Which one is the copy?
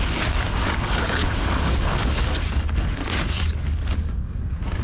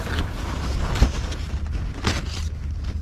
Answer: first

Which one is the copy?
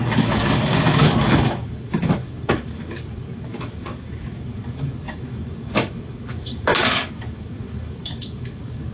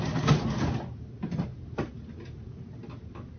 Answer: first